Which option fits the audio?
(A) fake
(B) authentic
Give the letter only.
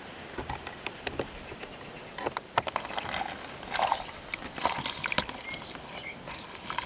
B